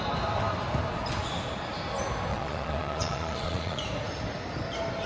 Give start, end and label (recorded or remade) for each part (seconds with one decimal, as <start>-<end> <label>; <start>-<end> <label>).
0.0-2.3 recorded; 2.3-3.8 remade; 3.8-5.1 recorded